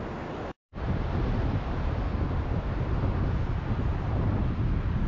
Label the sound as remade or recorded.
recorded